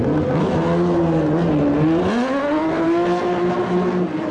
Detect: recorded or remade recorded